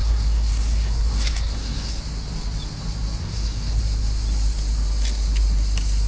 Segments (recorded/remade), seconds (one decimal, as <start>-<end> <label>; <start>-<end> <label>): 0.0-2.0 remade; 2.0-3.2 recorded; 3.2-3.8 remade; 3.8-6.1 recorded